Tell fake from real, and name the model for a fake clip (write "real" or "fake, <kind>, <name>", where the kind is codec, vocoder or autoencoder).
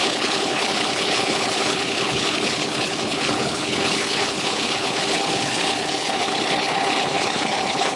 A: fake, codec, HILCodec